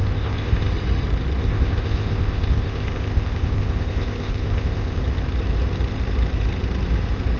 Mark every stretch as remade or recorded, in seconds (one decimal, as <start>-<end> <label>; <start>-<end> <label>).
0.0-0.7 remade; 0.7-1.4 recorded; 1.4-5.0 remade; 5.0-7.4 recorded